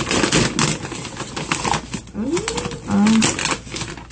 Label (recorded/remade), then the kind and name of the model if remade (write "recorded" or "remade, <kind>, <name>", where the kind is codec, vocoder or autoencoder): recorded